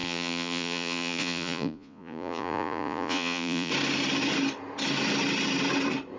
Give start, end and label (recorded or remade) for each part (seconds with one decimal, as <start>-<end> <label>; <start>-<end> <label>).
0.0-3.7 remade; 3.7-6.2 recorded